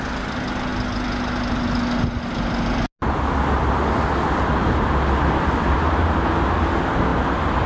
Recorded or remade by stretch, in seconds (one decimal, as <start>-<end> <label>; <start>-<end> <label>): 0.0-7.7 recorded